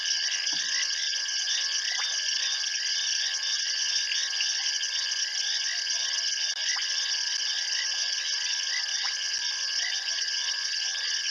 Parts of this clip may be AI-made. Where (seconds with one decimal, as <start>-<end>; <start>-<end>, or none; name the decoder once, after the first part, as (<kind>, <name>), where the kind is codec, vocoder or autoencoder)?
none